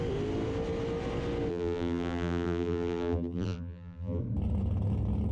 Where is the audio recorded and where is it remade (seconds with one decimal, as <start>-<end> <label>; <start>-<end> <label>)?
0.0-1.5 recorded; 1.5-4.2 remade; 4.2-5.3 recorded